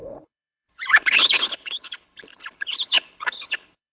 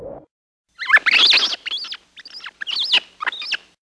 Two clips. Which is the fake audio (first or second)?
first